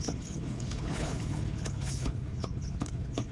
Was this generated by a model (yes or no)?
yes